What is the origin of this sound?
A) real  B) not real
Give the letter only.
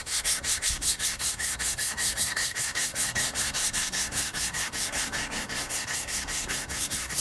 B